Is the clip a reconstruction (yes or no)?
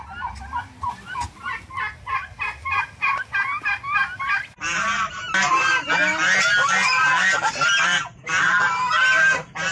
no